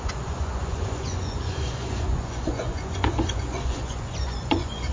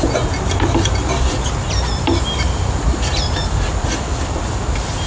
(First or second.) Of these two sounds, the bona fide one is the second